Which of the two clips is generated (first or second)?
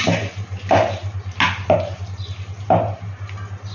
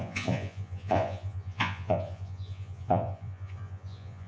second